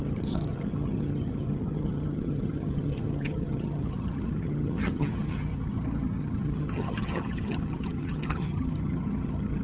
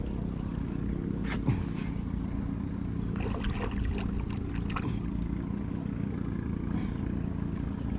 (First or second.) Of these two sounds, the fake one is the first